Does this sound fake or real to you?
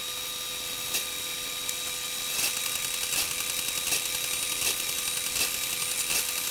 real